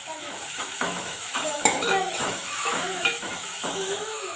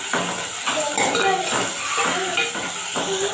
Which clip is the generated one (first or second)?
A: first